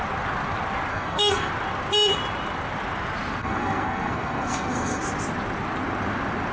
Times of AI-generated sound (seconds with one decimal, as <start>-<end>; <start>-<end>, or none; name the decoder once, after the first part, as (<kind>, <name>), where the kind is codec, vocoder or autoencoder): 0.9-1.5 (codec, SNAC); 3.4-5.0